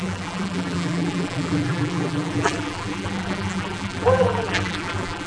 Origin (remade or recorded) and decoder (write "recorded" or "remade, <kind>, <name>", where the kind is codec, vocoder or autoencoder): remade, vocoder, BigVGAN v2